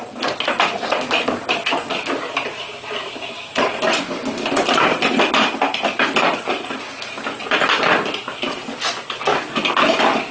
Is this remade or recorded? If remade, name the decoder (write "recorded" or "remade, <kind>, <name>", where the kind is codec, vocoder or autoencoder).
remade, vocoder, BigVGAN v2